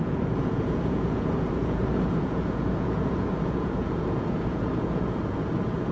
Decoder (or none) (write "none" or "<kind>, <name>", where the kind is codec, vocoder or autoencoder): vocoder, Vocos